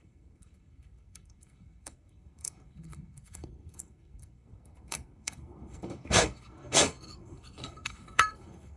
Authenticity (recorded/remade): remade